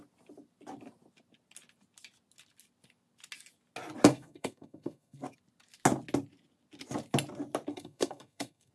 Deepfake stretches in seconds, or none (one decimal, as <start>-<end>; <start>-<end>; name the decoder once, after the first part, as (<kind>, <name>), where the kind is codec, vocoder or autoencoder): 4.1-5.2 (codec, SNAC); 7.7-8.7